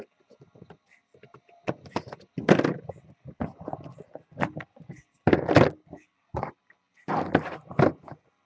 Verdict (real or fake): real